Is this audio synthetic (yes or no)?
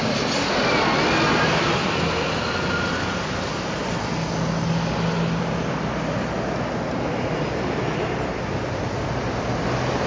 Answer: no